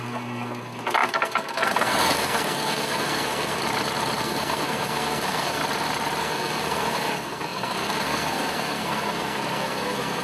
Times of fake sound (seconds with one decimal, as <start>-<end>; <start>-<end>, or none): 0.0-3.6; 4.2-5.6; 6.2-10.2